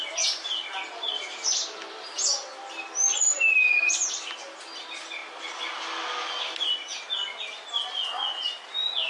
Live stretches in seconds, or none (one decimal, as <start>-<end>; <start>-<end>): 0.0-9.1